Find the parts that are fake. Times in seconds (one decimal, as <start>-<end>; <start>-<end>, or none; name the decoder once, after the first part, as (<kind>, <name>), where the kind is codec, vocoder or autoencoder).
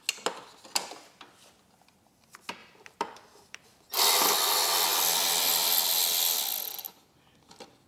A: 2.6-4.0 (vocoder, BigVGAN v2)